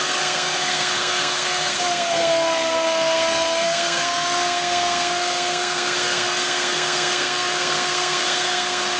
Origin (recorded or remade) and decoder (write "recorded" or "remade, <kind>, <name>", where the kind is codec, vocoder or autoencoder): remade, codec, SNAC